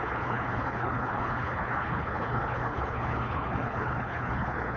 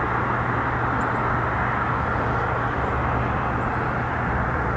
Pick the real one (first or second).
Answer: second